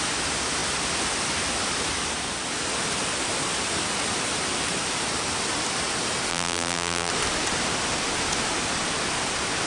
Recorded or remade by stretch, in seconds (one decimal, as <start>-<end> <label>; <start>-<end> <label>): 0.0-6.3 recorded; 6.3-7.1 remade; 7.1-9.7 recorded